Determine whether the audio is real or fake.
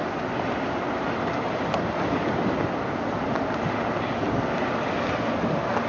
real